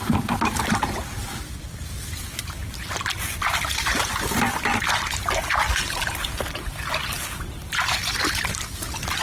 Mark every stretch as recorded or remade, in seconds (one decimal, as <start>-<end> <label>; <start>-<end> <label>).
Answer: 0.0-9.2 recorded